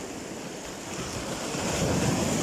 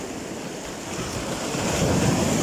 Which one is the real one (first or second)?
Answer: second